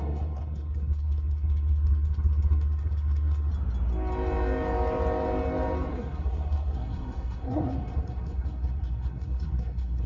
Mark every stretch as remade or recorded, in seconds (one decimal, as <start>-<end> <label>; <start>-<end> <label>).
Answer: 0.0-3.5 remade; 3.5-5.9 recorded; 5.9-10.1 remade

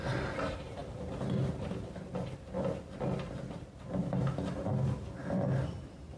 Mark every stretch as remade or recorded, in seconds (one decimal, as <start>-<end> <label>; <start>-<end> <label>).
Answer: 0.0-6.2 recorded

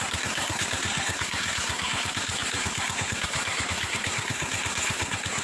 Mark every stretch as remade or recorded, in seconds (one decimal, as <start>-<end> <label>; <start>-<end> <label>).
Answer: 0.0-5.4 remade